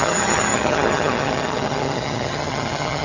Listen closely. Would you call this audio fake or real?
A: fake